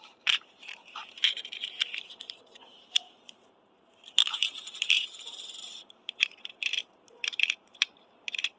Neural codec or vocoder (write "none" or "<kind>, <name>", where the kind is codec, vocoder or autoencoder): vocoder, BigVGAN v2